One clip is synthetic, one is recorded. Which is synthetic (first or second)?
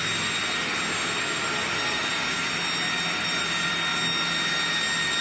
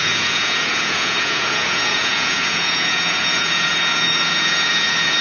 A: second